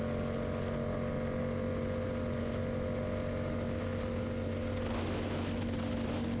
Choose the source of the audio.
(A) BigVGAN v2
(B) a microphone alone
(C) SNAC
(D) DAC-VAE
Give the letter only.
B